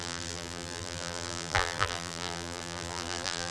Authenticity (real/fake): fake